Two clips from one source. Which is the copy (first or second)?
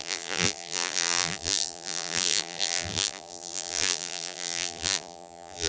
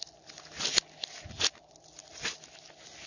first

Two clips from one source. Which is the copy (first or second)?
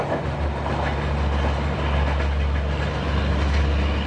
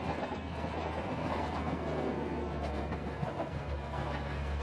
second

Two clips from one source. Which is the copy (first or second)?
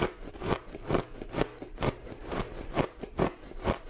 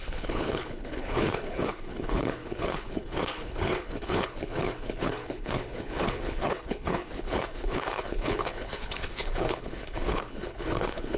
second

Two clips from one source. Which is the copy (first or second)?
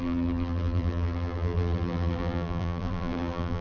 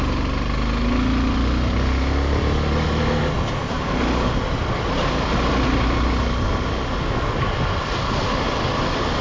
first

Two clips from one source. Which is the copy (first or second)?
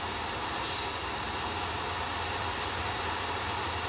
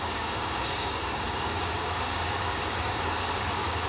second